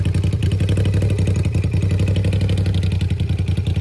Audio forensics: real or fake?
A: real